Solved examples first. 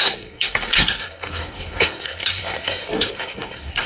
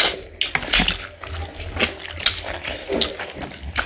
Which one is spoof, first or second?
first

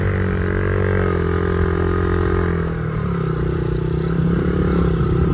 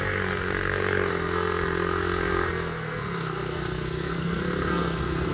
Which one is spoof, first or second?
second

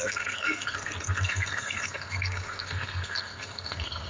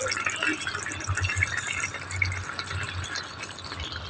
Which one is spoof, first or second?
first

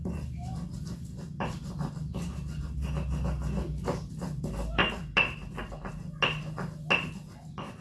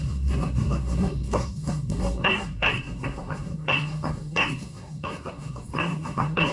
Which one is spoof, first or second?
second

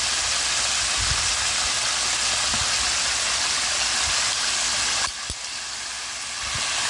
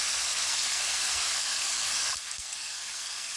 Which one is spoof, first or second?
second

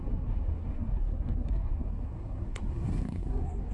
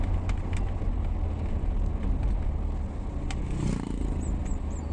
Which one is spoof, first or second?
first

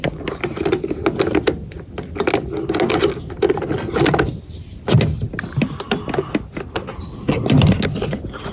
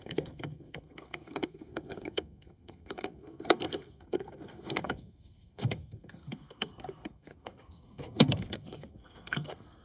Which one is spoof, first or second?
second